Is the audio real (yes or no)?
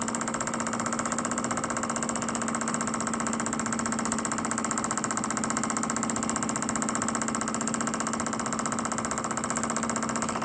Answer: yes